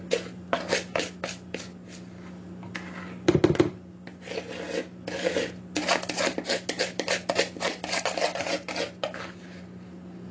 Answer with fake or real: real